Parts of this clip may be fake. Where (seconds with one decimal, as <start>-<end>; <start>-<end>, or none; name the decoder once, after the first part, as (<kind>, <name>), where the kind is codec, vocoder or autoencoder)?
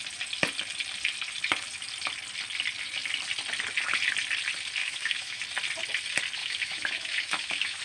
4.8-5.4 (autoencoder, DAC-VAE); 6.4-7.8